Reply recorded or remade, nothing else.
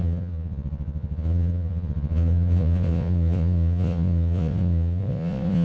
remade